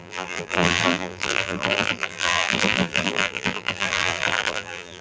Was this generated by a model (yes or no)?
yes